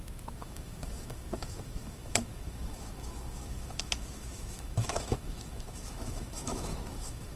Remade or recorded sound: remade